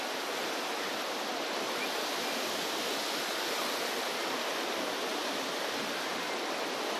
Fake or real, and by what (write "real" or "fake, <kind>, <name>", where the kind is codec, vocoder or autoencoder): real